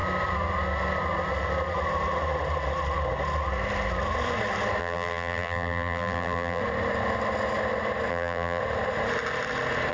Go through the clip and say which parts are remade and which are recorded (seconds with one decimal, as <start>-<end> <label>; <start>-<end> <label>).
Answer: 0.0-4.8 recorded; 4.8-6.6 remade; 6.6-8.1 recorded; 8.1-8.6 remade; 8.6-9.9 recorded